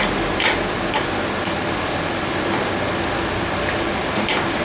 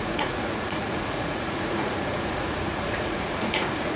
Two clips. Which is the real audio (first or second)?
first